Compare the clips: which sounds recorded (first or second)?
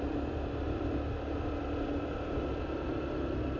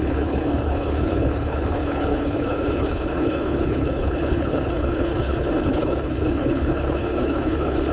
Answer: first